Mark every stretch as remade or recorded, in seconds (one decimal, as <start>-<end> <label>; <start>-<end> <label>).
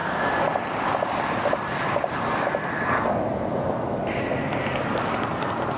0.0-5.8 recorded